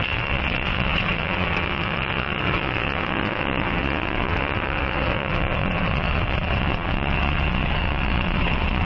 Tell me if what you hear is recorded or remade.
remade